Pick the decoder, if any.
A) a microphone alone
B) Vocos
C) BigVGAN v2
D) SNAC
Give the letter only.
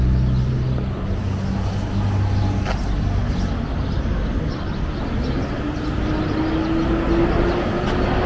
A